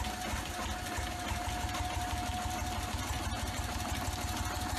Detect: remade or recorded recorded